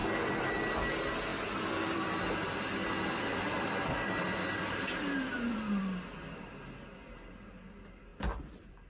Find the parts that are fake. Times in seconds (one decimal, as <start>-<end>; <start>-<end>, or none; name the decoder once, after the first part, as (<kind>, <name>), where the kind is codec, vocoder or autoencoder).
0.0-0.6 (vocoder, BigVGAN v2); 1.3-6.5; 8.1-8.9